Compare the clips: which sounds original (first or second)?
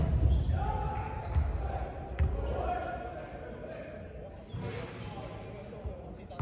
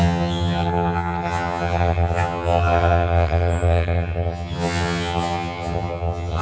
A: first